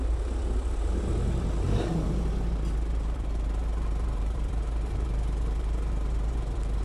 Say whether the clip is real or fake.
fake